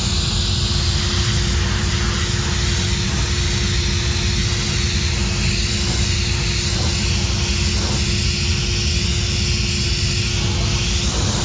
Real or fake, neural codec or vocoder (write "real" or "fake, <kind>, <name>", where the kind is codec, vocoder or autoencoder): real